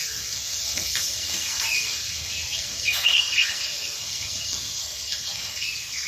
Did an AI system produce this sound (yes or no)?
yes